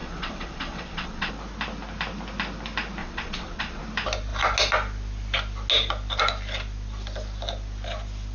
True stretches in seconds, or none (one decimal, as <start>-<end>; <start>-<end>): 1.3-3.0; 3.8-8.3